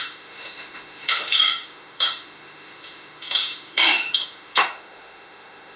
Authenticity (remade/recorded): remade